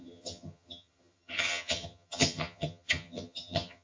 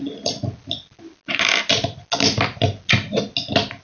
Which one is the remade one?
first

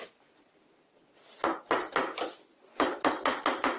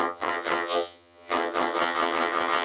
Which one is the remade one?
second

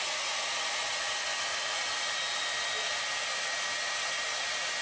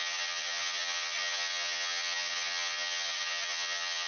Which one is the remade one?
second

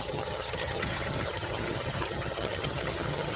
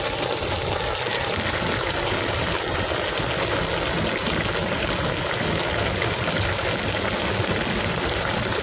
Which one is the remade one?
first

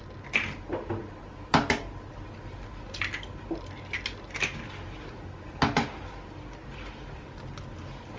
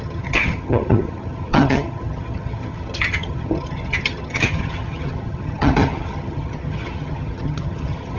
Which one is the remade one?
second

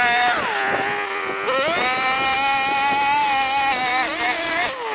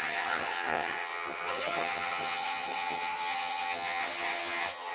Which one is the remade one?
second